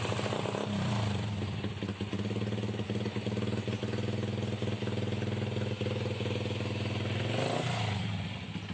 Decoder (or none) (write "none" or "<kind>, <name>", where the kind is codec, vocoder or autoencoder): none